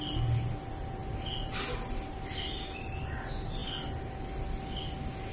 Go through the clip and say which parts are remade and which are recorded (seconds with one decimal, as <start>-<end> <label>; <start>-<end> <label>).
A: 0.0-5.3 recorded